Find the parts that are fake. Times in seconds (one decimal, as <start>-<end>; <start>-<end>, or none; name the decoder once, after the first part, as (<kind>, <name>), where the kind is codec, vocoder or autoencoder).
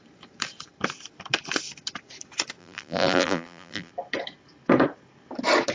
2.6-3.9 (vocoder, BigVGAN v2)